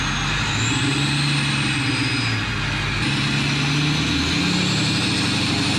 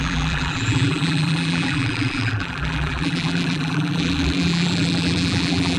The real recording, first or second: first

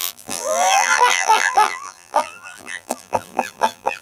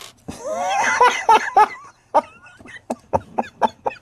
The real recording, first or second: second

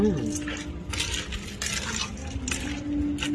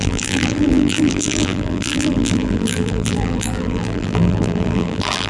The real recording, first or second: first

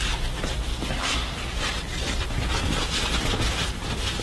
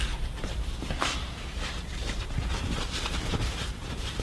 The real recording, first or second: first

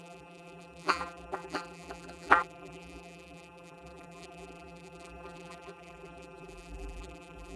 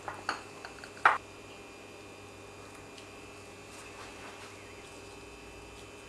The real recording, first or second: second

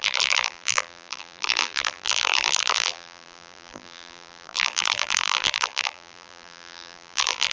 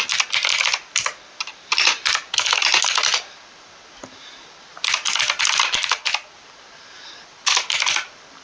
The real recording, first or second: second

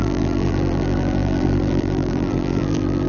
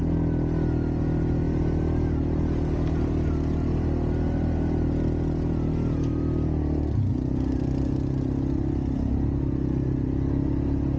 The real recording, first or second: second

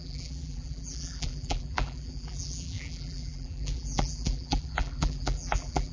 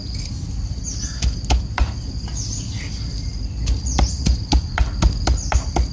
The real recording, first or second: second